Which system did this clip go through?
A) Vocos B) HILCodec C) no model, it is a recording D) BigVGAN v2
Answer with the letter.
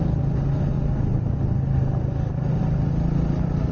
C